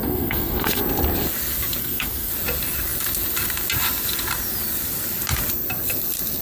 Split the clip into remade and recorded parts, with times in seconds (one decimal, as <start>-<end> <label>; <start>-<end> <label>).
0.0-0.8 remade; 0.8-1.8 recorded; 1.8-2.3 remade; 2.3-6.4 recorded